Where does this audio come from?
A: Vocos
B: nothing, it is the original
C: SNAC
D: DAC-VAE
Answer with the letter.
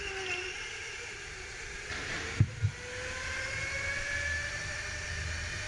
B